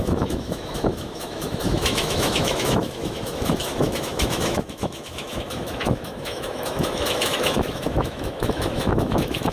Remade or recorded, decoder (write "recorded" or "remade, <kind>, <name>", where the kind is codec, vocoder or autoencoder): remade, autoencoder, DAC-VAE